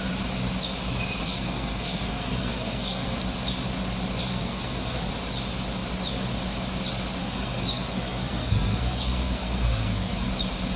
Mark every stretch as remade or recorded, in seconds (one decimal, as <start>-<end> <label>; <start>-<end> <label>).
0.0-1.2 recorded; 1.2-3.2 remade; 3.2-4.2 recorded; 4.2-5.1 remade; 5.1-7.2 recorded; 7.2-10.3 remade; 10.3-10.8 recorded